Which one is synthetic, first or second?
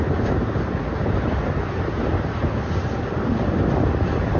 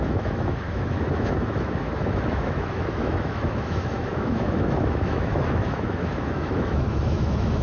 second